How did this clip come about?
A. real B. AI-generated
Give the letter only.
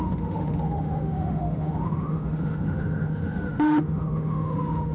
B